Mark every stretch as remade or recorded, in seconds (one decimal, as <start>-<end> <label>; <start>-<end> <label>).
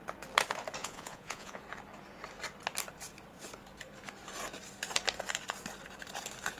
0.0-0.8 recorded; 0.8-1.6 remade; 1.6-6.6 recorded